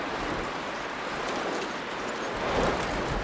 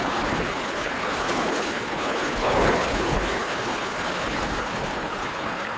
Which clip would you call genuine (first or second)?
first